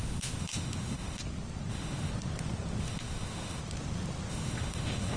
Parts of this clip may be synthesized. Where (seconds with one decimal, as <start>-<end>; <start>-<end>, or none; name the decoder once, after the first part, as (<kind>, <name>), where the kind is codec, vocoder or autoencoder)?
0.0-1.2 (autoencoder, DAC-VAE); 1.7-2.1; 2.8-3.6; 4.3-5.2